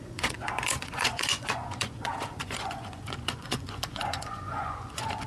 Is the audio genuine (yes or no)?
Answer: no